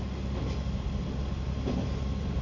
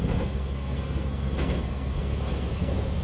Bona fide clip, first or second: first